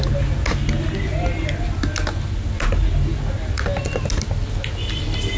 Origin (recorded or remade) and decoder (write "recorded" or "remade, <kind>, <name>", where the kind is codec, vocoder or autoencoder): recorded